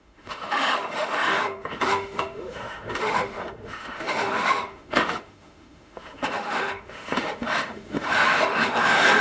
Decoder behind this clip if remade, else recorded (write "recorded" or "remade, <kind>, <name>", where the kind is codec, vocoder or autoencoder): remade, autoencoder, DAC-VAE